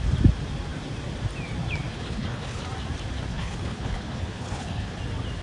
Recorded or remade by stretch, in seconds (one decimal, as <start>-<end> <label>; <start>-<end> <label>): 0.0-1.9 recorded; 1.9-2.6 remade; 2.6-3.3 recorded; 3.3-5.0 remade; 5.0-5.4 recorded

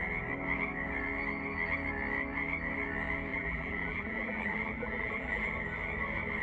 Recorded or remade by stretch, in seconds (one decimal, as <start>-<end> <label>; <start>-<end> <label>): 0.0-3.3 recorded; 3.3-5.5 remade; 5.5-6.4 recorded

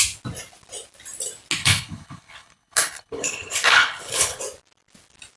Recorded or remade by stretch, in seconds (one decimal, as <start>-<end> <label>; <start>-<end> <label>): 0.0-1.6 recorded; 1.6-4.4 remade; 4.4-5.4 recorded

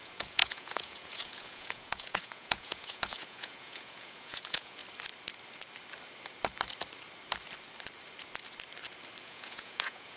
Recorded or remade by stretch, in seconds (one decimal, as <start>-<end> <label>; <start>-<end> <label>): 0.0-4.8 remade; 4.8-9.2 recorded; 9.2-10.2 remade

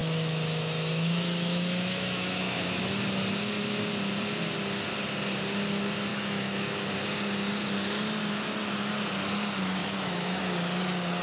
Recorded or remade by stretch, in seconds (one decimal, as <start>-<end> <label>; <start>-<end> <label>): 0.0-2.9 remade; 2.9-6.1 recorded; 6.1-6.9 remade; 6.9-9.8 recorded; 9.8-10.4 remade; 10.4-11.2 recorded

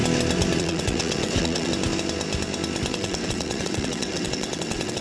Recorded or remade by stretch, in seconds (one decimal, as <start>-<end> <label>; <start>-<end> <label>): 0.0-0.6 recorded; 0.6-1.7 remade; 1.7-2.9 recorded; 2.9-5.0 remade